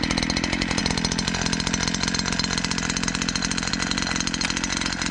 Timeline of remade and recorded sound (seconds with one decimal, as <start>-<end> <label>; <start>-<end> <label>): 0.0-5.1 recorded